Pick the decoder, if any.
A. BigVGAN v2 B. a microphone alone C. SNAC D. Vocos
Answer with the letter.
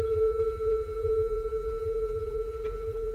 A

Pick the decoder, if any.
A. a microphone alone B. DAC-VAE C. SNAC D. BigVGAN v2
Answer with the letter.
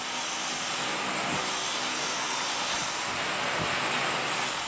A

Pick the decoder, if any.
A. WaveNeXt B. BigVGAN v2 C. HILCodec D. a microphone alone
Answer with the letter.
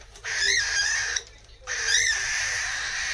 B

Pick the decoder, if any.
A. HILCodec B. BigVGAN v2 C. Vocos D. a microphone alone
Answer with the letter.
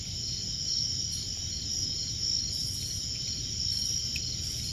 D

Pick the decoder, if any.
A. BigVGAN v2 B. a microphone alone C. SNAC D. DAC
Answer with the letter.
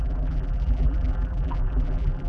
A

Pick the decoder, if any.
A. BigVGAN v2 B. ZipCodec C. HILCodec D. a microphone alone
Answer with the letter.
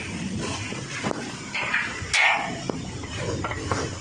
D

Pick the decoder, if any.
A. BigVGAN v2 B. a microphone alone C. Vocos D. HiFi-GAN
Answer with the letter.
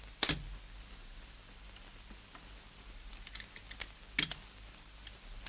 B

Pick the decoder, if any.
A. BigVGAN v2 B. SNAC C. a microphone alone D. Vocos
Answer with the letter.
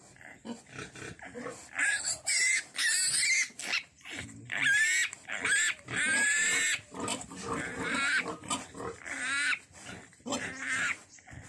C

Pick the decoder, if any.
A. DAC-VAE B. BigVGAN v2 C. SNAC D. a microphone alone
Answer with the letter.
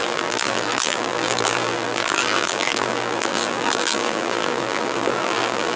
B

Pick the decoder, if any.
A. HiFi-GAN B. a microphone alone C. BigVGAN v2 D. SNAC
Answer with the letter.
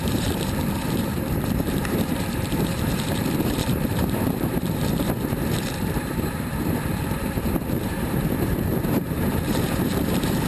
C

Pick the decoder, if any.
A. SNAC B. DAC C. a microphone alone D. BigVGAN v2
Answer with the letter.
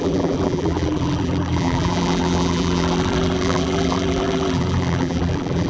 D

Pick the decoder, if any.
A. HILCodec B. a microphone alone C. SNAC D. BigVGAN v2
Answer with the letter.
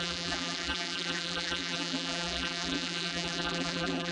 D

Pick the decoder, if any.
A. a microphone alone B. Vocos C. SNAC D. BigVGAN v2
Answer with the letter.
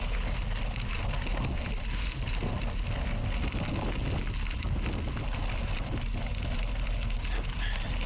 A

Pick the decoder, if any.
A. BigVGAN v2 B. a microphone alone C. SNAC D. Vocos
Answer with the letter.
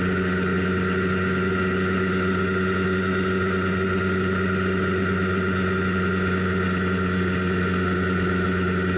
B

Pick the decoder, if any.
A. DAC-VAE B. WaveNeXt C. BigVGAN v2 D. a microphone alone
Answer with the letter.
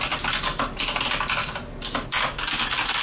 D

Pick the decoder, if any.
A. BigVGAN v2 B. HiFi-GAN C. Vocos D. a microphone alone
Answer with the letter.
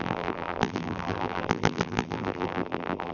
A